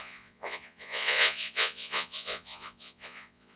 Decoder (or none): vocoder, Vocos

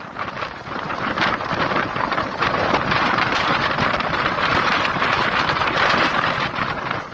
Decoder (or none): vocoder, BigVGAN v2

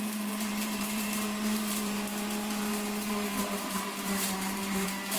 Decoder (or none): vocoder, BigVGAN v2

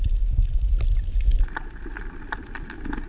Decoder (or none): none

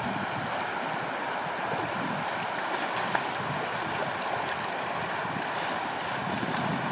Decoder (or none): none